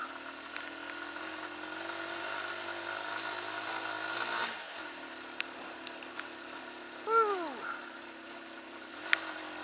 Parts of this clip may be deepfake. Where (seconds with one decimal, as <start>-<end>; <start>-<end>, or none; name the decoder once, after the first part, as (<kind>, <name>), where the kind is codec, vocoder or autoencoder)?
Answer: none